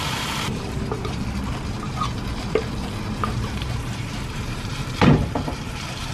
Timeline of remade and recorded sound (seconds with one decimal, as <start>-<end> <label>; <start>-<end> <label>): 0.0-1.2 remade; 1.2-3.2 recorded; 3.2-6.1 remade